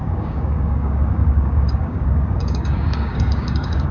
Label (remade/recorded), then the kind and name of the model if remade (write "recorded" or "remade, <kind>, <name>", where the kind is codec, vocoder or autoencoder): remade, codec, DAC